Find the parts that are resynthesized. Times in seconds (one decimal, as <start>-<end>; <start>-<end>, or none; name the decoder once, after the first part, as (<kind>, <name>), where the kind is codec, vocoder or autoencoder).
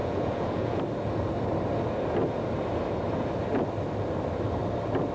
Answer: 0.0-0.8 (vocoder, Vocos)